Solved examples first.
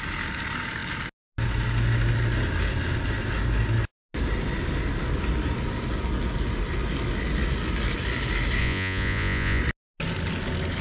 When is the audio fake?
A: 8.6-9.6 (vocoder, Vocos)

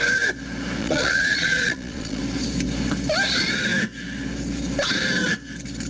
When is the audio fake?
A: 0.8-2.2 (vocoder, Vocos)

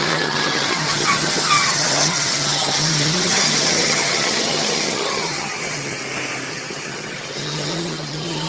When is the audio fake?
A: 0.0-6.0 (vocoder, HiFi-GAN); 6.5-8.5

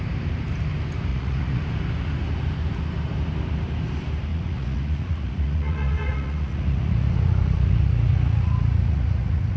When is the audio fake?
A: 1.1-1.6 (vocoder, Vocos); 4.3-9.6

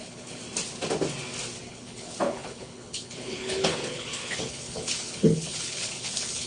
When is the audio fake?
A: 0.0-0.4 (codec, HILCodec); 1.7-6.5

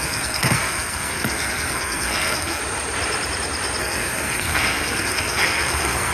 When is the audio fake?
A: 0.0-2.6 (codec, SNAC); 3.8-6.1

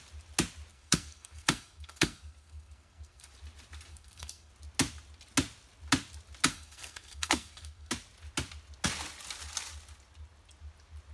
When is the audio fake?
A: 0.7-3.3 (codec, SNAC); 3.9-4.5; 6.5-7.9

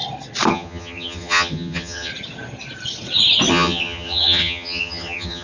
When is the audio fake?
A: 0.5-2.1 (vocoder, HiFi-GAN); 3.5-5.4